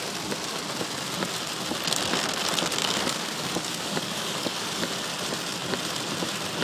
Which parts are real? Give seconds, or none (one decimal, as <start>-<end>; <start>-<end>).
0.0-2.8; 4.8-6.6